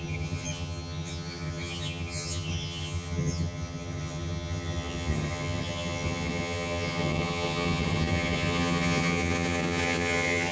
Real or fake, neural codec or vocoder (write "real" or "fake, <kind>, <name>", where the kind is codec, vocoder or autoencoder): fake, vocoder, HiFi-GAN